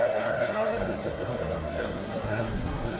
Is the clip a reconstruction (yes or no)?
yes